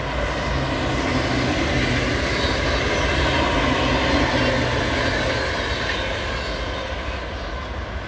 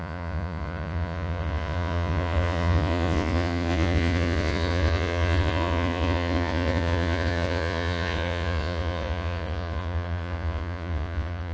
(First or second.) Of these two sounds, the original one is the first